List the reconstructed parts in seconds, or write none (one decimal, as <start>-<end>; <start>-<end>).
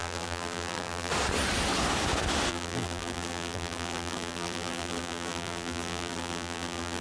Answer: 0.0-1.1; 2.5-7.0